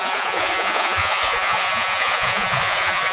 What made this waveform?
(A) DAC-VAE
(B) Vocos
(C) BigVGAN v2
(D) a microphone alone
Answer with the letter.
B